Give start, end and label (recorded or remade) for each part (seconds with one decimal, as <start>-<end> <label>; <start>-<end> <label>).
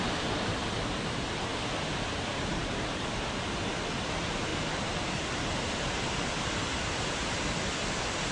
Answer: 0.0-7.2 remade; 7.2-7.8 recorded; 7.8-8.3 remade